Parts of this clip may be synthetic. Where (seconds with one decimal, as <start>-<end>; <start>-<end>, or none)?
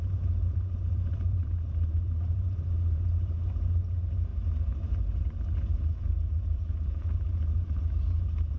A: 0.0-4.3; 5.6-8.6